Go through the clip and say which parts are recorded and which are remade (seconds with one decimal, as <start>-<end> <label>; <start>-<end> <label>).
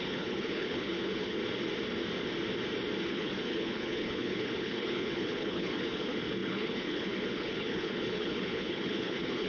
0.0-1.4 remade; 1.4-3.0 recorded; 3.0-9.5 remade